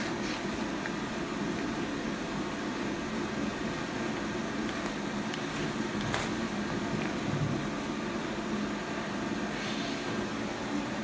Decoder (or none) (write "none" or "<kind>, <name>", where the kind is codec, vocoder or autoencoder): none